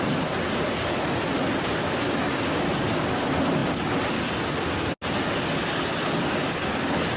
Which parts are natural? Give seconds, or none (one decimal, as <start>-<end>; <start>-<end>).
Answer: 0.0-7.2